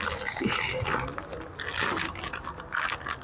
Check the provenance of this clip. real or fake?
real